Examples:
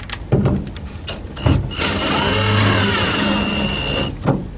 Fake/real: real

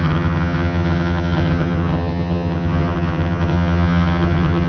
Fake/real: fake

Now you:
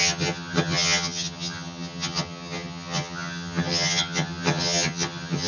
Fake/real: fake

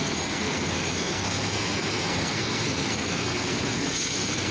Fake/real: fake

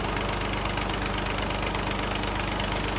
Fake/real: real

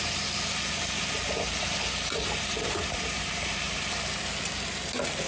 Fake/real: real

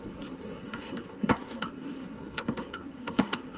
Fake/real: fake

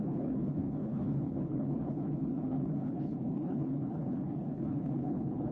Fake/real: fake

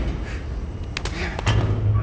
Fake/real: real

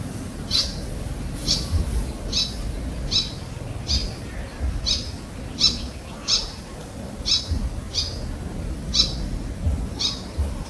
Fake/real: real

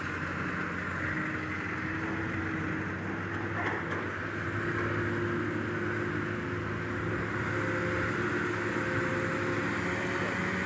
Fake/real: real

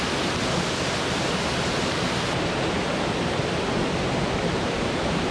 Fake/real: real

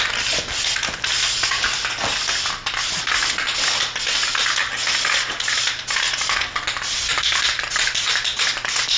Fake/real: real